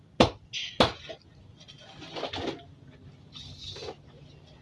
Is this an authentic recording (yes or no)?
yes